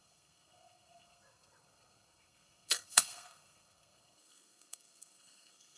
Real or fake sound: fake